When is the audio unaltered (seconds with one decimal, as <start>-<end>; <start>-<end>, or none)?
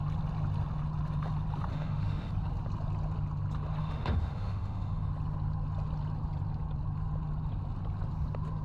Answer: 0.0-1.7; 2.3-3.8; 5.1-8.6